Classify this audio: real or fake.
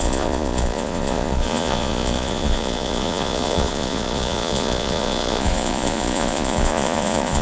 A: fake